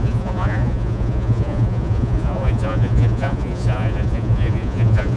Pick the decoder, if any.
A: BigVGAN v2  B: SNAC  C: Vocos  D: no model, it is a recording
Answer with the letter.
C